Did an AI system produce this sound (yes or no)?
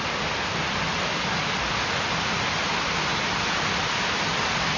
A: no